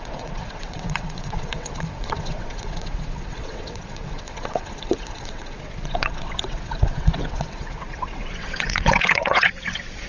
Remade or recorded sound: remade